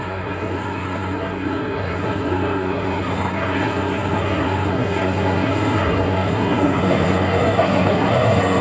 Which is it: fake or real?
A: fake